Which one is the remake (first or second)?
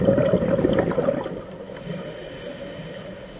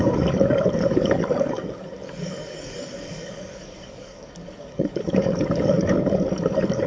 second